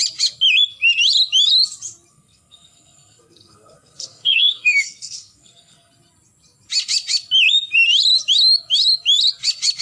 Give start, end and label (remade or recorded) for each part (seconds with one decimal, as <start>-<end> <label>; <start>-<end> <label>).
0.0-2.1 recorded; 2.1-5.9 remade; 5.9-9.8 recorded